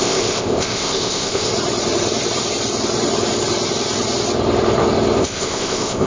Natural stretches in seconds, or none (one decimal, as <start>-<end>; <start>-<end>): 1.5-5.2